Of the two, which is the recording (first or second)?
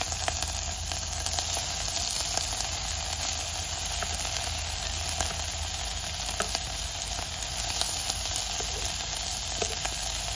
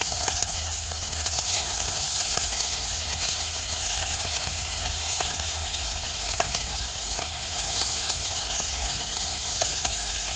first